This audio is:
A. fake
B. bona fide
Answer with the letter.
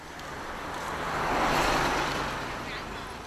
A